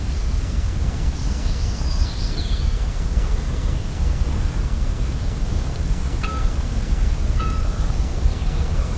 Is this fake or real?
fake